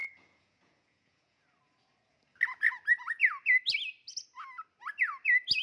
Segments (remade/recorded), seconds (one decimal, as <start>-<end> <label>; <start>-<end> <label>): 0.0-1.4 remade; 1.4-5.6 recorded